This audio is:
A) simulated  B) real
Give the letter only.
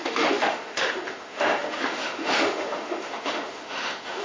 A